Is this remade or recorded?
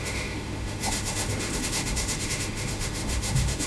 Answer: remade